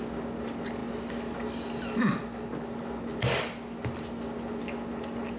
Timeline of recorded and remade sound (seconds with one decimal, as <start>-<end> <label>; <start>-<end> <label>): 0.0-5.4 recorded